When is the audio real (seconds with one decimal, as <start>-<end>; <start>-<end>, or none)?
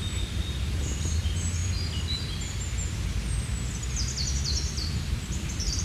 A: 1.6-4.9